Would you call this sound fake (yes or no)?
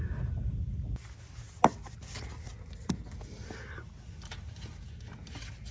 no